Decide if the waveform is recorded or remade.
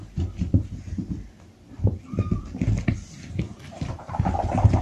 remade